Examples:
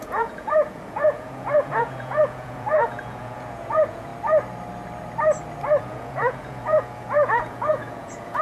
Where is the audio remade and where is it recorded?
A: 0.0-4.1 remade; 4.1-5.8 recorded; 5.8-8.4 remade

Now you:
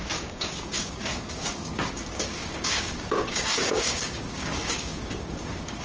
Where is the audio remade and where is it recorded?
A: 0.0-5.8 remade

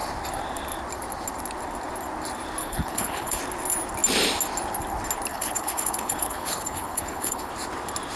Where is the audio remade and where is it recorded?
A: 0.0-2.6 recorded; 2.6-3.4 remade; 3.4-5.3 recorded; 5.3-7.5 remade; 7.5-8.2 recorded

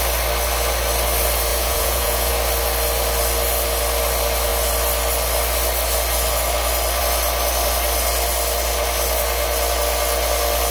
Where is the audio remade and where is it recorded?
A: 0.0-1.5 recorded; 1.5-2.3 remade; 2.3-10.7 recorded

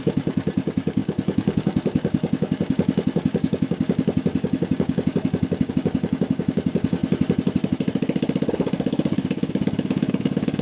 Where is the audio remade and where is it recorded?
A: 0.0-7.0 remade; 7.0-8.5 recorded; 8.5-10.6 remade

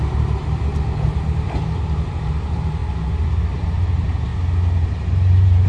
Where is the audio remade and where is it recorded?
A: 0.0-2.8 remade; 2.8-3.5 recorded; 3.5-4.3 remade; 4.3-4.8 recorded; 4.8-5.7 remade